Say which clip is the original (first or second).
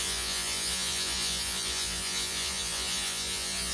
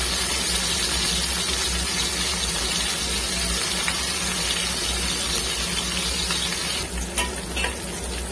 second